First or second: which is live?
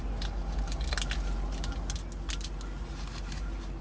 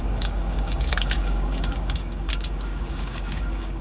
first